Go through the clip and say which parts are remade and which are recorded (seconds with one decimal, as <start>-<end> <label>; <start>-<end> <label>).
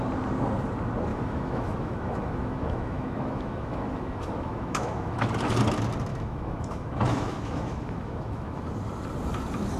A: 0.0-1.1 recorded; 1.1-5.3 remade; 5.3-6.1 recorded; 6.1-8.7 remade; 8.7-9.8 recorded